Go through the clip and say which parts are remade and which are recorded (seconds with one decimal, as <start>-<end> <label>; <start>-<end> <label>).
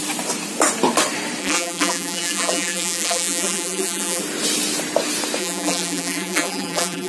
0.0-1.4 recorded; 1.4-4.2 remade; 4.2-5.4 recorded; 5.4-7.1 remade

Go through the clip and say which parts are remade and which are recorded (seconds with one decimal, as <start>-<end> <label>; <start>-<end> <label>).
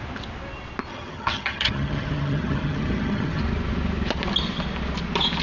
0.0-0.9 recorded; 0.9-3.4 remade; 3.4-5.4 recorded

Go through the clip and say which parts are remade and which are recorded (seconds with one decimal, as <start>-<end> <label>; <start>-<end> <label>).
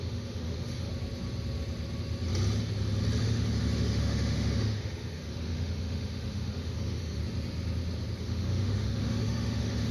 0.0-0.9 remade; 0.9-3.2 recorded; 3.2-7.2 remade; 7.2-8.2 recorded; 8.2-9.9 remade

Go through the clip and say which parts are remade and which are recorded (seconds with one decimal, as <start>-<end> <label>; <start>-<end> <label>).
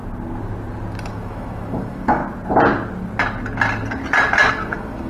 0.0-1.1 recorded; 1.1-2.2 remade; 2.2-4.5 recorded; 4.5-5.1 remade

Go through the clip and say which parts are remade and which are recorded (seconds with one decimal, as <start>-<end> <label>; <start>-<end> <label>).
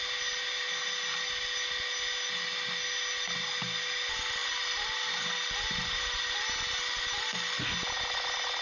0.0-8.6 recorded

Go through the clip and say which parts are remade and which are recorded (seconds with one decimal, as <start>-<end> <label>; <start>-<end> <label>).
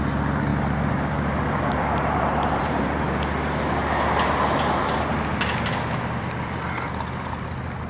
0.0-0.5 recorded; 0.5-3.1 remade; 3.1-7.9 recorded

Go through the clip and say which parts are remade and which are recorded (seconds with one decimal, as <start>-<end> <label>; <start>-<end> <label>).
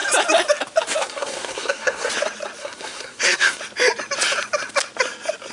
0.0-1.0 recorded; 1.0-2.1 remade; 2.1-2.6 recorded; 2.6-3.6 remade; 3.6-5.5 recorded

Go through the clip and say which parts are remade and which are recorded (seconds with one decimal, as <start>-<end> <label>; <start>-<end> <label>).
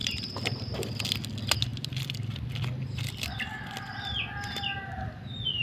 0.0-0.9 remade; 0.9-5.6 recorded